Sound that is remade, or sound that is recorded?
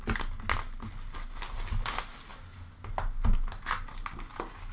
recorded